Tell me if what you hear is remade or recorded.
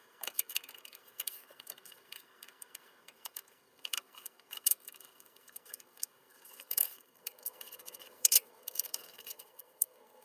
remade